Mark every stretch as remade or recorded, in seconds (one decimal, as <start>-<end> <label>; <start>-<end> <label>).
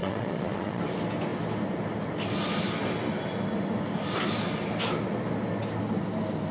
0.0-0.8 remade; 0.8-6.5 recorded